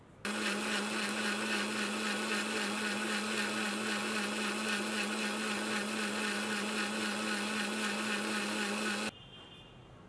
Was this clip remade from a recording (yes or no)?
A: no